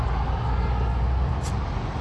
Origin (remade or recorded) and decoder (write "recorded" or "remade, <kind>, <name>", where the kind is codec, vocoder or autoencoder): recorded